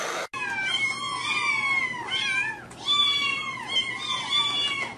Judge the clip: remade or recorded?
recorded